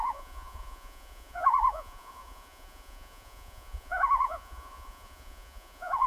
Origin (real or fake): fake